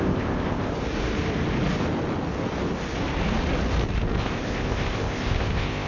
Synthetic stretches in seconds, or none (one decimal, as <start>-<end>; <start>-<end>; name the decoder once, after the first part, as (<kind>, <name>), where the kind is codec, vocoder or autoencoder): 0.0-0.7 (codec, ZipCodec); 4.2-5.9